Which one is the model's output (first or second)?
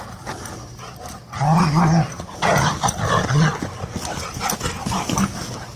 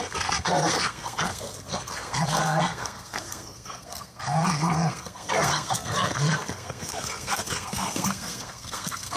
second